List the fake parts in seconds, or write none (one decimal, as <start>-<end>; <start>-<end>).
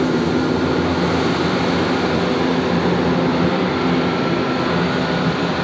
3.3-4.4